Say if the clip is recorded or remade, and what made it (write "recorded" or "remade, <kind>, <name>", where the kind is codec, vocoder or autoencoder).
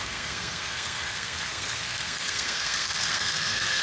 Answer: remade, codec, SNAC